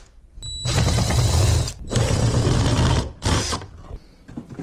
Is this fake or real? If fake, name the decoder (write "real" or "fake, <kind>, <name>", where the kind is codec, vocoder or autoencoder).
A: real